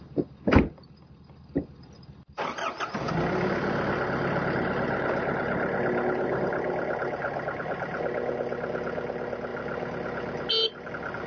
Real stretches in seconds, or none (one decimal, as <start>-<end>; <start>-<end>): 0.0-11.3